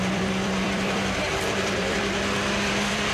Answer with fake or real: fake